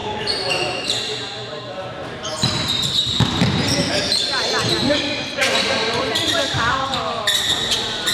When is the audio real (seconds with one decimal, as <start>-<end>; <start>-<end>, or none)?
none